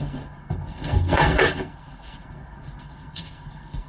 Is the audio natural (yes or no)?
no